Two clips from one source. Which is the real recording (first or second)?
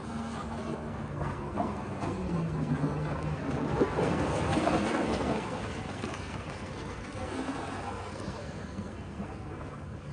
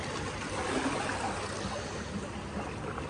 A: second